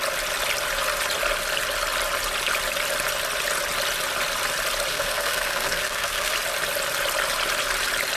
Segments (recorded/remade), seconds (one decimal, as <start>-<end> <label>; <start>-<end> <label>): 0.0-4.9 recorded; 4.9-6.3 remade; 6.3-8.2 recorded